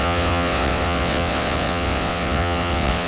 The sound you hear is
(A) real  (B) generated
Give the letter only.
B